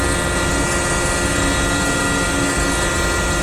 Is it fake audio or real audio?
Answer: real